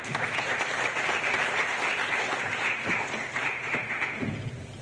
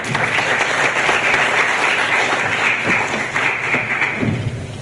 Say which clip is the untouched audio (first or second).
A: second